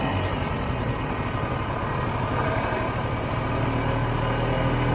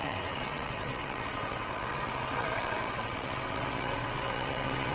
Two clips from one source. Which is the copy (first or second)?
second